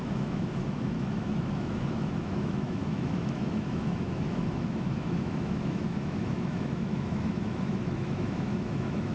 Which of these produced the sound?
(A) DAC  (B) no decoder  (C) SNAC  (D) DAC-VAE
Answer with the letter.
D